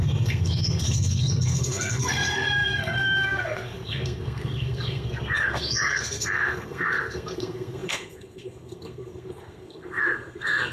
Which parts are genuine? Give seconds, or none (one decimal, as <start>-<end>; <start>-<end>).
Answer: none